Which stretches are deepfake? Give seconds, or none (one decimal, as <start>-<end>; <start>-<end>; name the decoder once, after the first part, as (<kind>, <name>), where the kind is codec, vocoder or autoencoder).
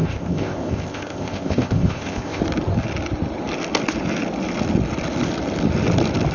0.0-2.4 (codec, ZipCodec)